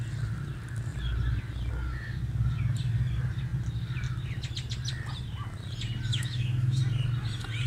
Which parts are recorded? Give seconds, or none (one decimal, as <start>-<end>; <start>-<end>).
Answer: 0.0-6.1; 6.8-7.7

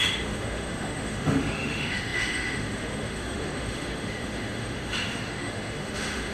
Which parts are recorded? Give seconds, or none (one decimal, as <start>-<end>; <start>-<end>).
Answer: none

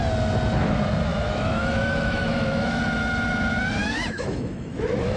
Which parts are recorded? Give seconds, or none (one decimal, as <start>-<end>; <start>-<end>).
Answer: 0.0-1.1; 2.8-3.8

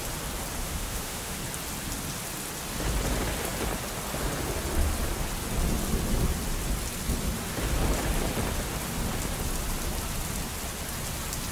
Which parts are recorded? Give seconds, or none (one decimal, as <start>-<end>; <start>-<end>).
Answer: 0.0-0.6; 1.4-11.5

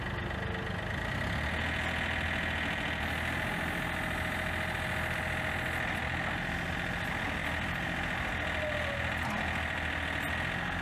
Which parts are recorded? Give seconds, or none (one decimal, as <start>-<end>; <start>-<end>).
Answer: 0.0-10.8